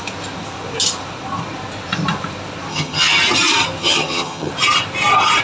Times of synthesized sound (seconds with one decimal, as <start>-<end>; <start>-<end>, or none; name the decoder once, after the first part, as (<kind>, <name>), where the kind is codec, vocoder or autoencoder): 2.7-3.2 (vocoder, HiFi-GAN); 3.8-4.5